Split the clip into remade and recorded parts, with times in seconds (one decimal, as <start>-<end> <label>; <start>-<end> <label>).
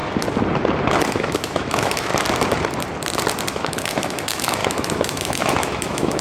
0.0-1.1 recorded; 1.1-2.1 remade; 2.1-3.5 recorded; 3.5-6.2 remade